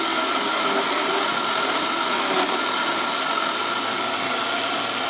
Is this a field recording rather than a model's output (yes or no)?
yes